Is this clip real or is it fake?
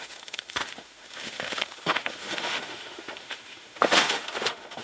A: fake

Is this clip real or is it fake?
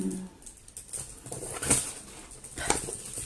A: real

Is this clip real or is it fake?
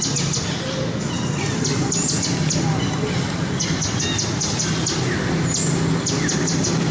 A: real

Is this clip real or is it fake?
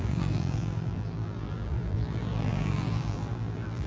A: fake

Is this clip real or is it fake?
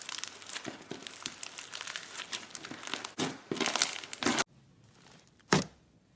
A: real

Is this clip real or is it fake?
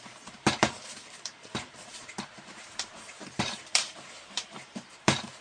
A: fake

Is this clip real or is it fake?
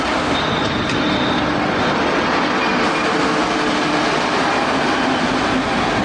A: real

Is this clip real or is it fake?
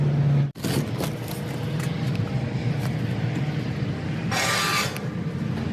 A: real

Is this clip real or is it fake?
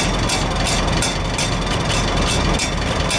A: real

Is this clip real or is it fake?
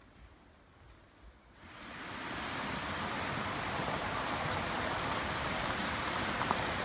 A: fake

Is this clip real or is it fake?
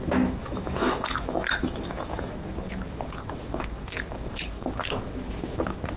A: fake